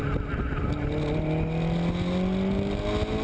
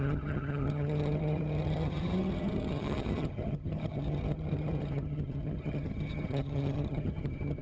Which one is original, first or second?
first